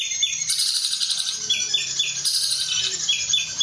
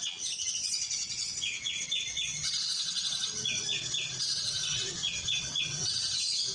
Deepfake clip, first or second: second